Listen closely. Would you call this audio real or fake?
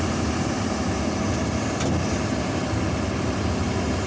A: real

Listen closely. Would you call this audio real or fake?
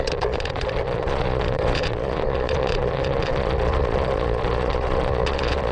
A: fake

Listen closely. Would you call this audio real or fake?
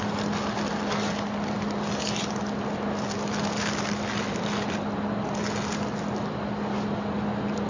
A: real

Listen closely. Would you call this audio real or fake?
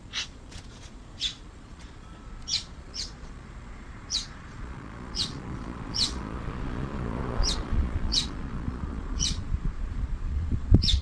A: fake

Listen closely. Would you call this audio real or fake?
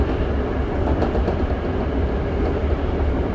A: real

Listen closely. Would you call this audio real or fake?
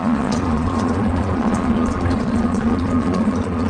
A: fake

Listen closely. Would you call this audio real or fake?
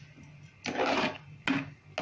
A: real